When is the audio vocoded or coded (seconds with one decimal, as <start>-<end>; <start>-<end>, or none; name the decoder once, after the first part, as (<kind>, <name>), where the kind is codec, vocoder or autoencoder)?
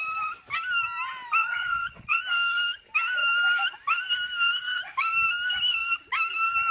1.4-2.2 (vocoder, Vocos)